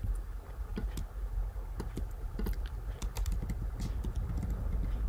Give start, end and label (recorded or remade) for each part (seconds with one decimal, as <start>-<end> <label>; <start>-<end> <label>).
0.0-5.1 recorded